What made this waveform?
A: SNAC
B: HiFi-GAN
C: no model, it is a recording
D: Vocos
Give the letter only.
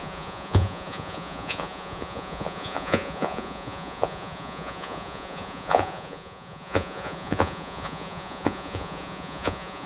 D